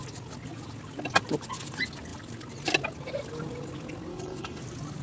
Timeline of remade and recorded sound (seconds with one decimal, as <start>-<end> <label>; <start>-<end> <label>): 0.0-4.1 recorded; 4.1-4.6 remade; 4.6-5.0 recorded